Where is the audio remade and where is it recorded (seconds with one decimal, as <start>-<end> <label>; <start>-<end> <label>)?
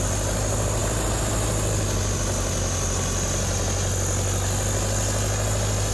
0.0-5.9 recorded